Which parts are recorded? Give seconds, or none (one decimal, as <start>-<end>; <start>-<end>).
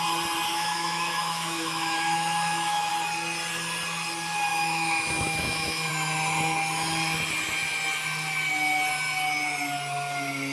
0.0-0.5; 2.9-4.5; 5.9-10.5